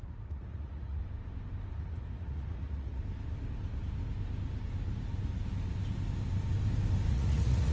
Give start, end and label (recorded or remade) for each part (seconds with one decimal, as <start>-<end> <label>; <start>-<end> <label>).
0.0-1.0 remade; 1.0-1.8 recorded; 1.8-3.0 remade; 3.0-7.1 recorded; 7.1-7.7 remade